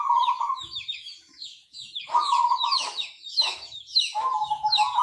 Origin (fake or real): fake